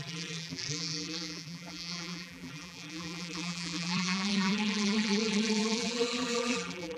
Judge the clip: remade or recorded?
remade